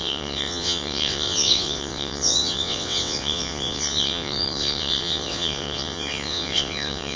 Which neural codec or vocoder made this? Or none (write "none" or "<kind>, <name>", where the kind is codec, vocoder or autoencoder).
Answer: vocoder, WaveNeXt